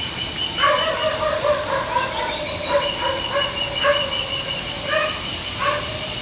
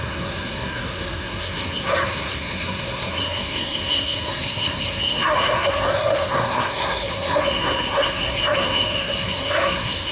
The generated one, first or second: second